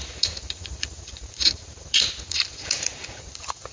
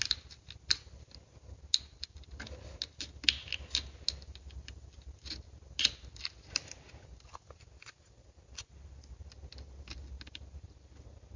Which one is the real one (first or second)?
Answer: second